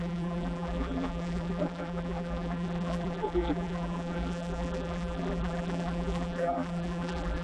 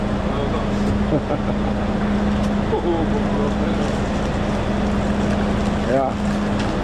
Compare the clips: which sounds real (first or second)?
second